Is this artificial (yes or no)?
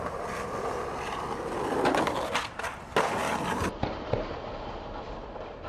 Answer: no